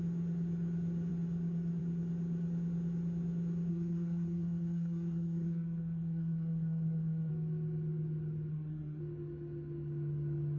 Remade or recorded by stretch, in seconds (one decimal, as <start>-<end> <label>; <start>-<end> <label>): 0.0-3.7 recorded; 3.7-7.3 remade; 7.3-8.5 recorded; 8.5-9.0 remade; 9.0-10.6 recorded